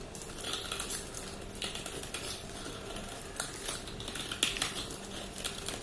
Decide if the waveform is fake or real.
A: real